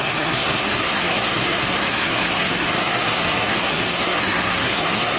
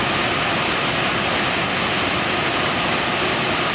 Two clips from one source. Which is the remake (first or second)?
first